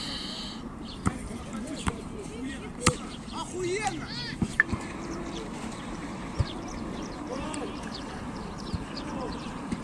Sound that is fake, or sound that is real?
fake